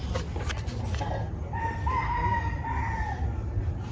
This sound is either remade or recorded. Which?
recorded